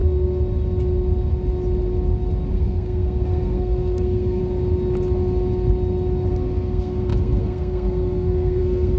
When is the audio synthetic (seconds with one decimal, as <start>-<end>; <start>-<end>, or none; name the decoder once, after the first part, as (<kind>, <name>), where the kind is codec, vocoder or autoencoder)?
2.5-4.4 (codec, SNAC); 6.3-9.0